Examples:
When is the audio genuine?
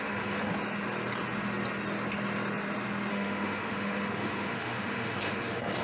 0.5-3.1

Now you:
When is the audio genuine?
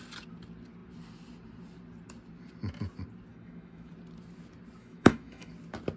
0.0-3.3; 3.9-4.8; 5.5-6.0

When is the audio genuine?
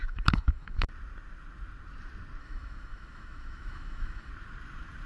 0.9-2.4; 4.3-5.1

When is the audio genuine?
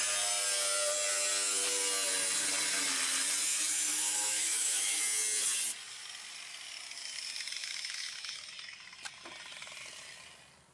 0.0-3.5; 5.0-7.6; 8.4-10.7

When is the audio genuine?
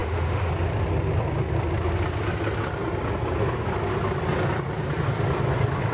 0.5-5.9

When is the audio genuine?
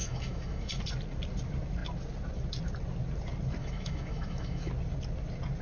0.8-3.6; 4.7-5.6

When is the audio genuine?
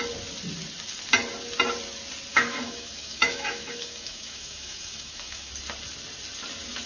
0.0-2.3; 5.5-6.9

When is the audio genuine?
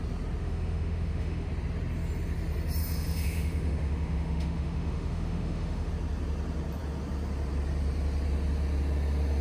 0.0-0.4; 1.5-2.8; 5.9-9.4